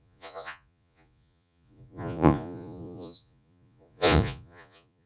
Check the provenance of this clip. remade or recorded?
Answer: remade